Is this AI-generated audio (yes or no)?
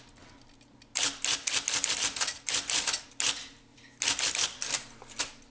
no